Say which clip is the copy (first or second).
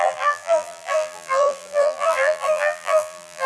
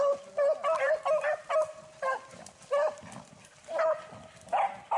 first